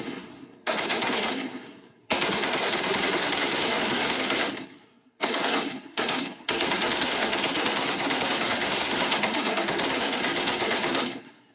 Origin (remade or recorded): remade